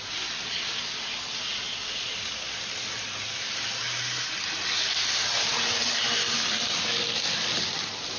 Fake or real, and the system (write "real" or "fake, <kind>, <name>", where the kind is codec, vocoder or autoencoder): real